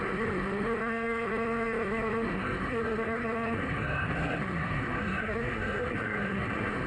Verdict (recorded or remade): remade